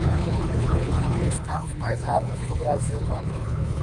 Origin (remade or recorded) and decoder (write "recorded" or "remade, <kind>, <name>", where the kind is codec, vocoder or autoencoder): remade, codec, HILCodec